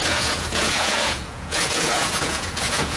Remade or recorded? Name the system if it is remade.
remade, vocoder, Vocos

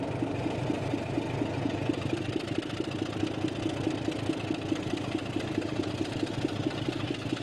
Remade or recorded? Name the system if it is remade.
recorded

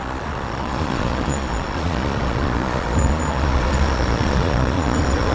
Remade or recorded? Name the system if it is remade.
remade, vocoder, Vocos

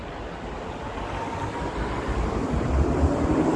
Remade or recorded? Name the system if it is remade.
recorded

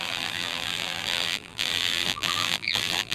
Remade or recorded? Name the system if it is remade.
remade, vocoder, BigVGAN v2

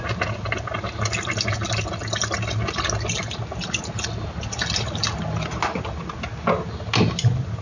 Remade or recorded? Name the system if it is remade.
recorded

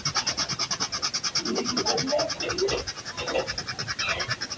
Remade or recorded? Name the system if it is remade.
recorded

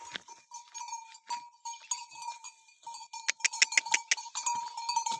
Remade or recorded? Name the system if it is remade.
recorded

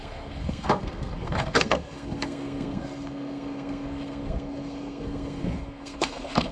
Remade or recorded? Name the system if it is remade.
remade, codec, SNAC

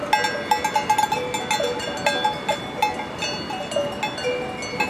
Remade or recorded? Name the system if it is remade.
recorded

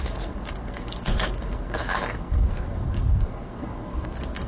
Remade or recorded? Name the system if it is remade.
remade, codec, SNAC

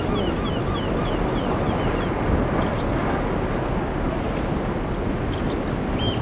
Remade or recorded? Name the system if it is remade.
recorded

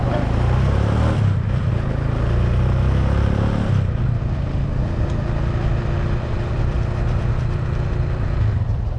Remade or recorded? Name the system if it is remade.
recorded